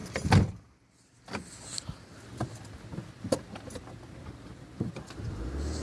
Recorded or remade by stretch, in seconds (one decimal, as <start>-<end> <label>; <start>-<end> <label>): 0.0-5.8 recorded